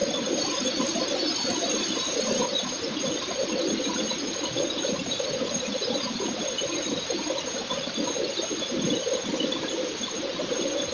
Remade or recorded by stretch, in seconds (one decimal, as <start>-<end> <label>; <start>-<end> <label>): 0.0-3.5 remade; 3.5-10.9 recorded